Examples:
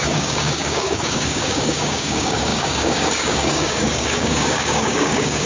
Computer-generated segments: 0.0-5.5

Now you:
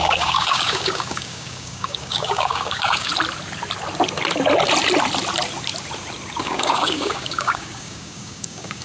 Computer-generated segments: 0.0-3.1; 6.4-8.8

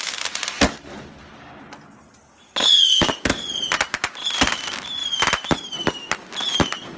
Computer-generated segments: 2.2-3.1

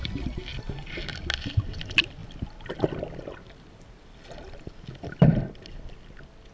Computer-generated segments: none

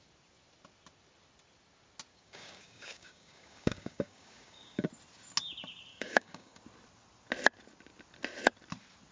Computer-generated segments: 2.1-4.9; 5.9-6.6

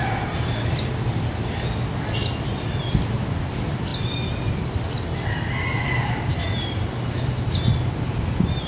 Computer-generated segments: none

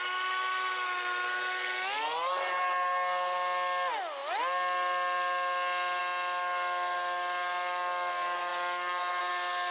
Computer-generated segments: none